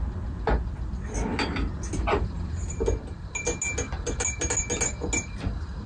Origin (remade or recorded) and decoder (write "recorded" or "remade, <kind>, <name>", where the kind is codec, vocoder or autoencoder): recorded